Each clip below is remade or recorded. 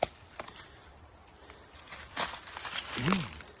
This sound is recorded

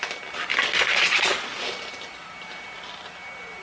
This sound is recorded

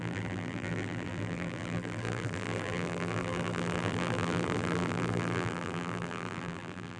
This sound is remade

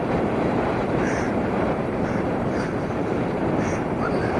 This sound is remade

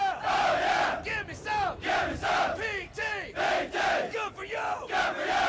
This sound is recorded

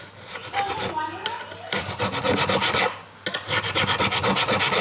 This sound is recorded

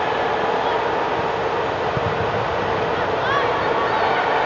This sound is recorded